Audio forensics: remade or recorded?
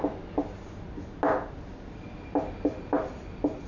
recorded